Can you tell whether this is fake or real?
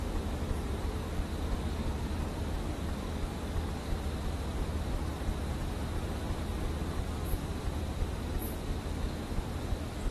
real